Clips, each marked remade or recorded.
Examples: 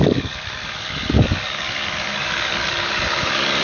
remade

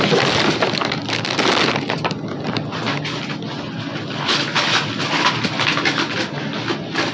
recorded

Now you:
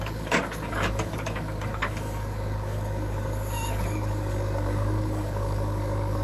remade